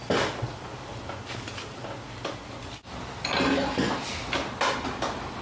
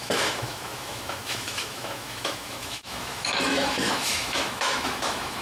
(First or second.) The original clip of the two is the first